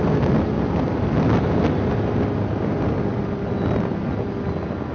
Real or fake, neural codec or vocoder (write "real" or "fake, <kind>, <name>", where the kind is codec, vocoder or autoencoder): real